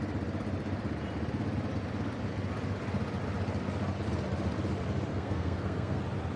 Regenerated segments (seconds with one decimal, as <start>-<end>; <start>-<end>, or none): 5.1-6.0